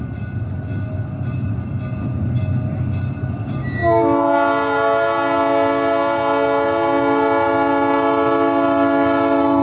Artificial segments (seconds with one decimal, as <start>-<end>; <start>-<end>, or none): none

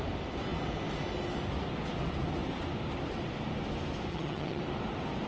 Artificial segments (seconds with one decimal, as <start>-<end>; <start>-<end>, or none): 4.1-4.6

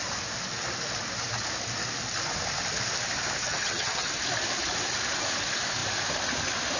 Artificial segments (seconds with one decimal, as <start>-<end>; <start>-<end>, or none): 3.4-4.1

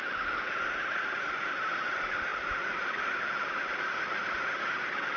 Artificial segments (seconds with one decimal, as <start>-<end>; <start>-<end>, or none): none